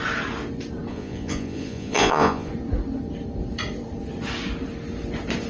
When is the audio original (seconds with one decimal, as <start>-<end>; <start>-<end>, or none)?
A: 0.0-0.9; 2.5-5.5